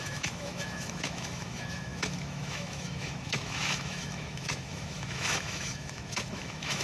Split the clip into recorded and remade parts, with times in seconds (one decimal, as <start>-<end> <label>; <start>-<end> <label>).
0.0-6.8 remade